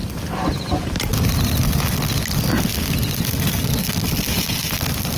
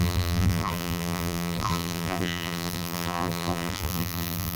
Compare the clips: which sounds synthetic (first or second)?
second